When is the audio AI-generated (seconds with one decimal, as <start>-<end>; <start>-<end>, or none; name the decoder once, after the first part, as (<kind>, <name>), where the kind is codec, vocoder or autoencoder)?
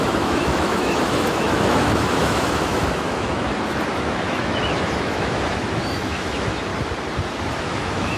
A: 0.0-6.7 (autoencoder, DAC-VAE); 7.6-8.2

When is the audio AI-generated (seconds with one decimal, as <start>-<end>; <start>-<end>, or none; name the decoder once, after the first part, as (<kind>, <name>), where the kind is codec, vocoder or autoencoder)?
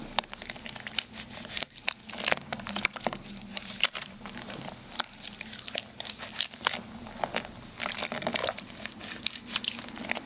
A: 3.5-4.7 (vocoder, BigVGAN v2); 8.4-9.0